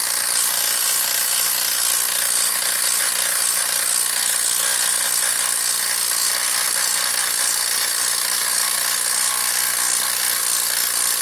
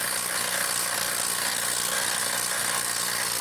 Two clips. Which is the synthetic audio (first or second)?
second